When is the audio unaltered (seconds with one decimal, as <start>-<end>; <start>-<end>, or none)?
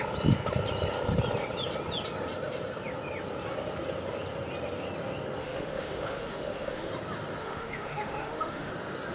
0.0-5.4; 6.9-7.4; 8.7-9.1